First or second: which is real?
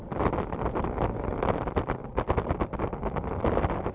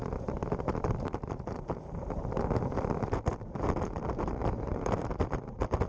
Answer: first